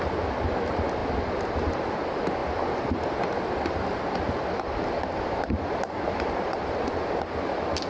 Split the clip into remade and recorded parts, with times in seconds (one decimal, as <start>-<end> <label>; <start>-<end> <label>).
0.0-7.9 recorded